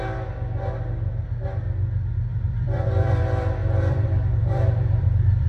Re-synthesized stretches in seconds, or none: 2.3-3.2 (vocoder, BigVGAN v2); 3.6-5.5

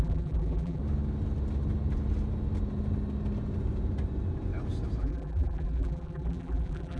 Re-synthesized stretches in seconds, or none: 0.0-0.8 (vocoder, BigVGAN v2); 5.0-7.0

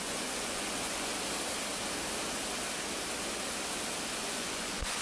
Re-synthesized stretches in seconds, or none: 0.0-1.1 (vocoder, Vocos); 4.1-5.0

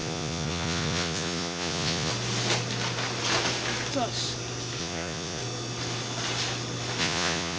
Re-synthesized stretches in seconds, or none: 0.0-2.1 (vocoder, Vocos); 4.8-5.4; 7.0-7.6